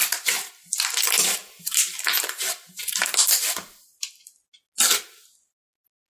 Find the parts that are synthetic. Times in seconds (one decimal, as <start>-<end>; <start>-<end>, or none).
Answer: 0.0-0.5; 1.4-4.1